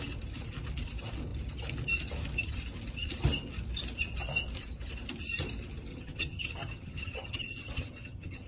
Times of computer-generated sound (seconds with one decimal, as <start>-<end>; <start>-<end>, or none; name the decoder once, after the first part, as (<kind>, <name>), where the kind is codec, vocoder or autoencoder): 5.9-8.5 (vocoder, HiFi-GAN)